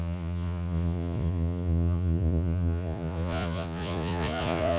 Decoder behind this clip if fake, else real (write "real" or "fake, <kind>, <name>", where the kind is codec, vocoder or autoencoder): fake, vocoder, Vocos